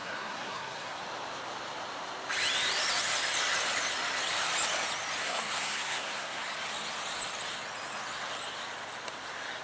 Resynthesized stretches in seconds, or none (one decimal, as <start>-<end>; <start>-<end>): 0.0-1.0; 5.2-6.4